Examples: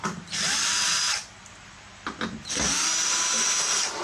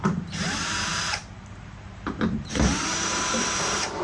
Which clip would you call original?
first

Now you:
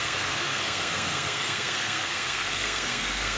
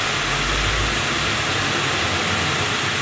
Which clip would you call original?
second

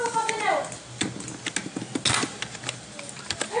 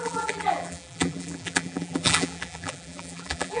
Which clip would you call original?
first